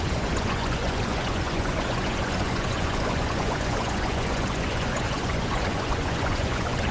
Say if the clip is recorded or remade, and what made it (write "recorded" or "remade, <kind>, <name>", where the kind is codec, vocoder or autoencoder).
remade, vocoder, Vocos